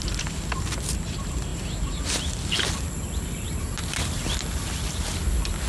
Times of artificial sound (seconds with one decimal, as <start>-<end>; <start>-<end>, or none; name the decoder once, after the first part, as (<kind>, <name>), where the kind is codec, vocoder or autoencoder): none